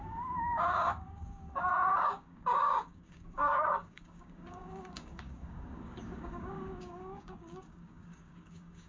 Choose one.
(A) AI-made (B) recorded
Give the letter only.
A